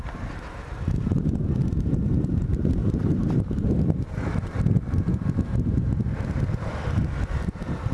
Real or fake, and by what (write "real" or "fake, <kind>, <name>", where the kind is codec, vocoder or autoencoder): fake, vocoder, BigVGAN v2